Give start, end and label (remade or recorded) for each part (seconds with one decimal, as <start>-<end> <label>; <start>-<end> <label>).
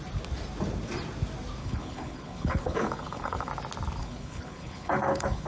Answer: 0.0-1.6 recorded; 1.6-3.5 remade; 3.5-4.0 recorded; 4.0-5.5 remade